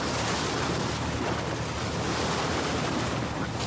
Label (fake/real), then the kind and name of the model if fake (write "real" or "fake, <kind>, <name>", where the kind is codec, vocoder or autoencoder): real